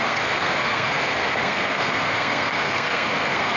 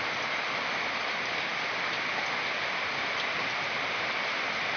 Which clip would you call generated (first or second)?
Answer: first